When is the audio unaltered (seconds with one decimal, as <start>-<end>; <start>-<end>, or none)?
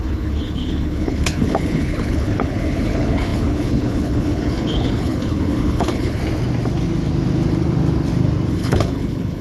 6.2-8.5